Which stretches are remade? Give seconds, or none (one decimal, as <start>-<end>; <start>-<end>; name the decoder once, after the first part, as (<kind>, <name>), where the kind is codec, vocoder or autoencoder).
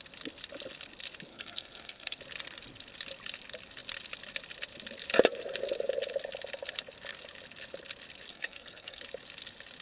1.3-2.2 (codec, SNAC); 8.3-9.0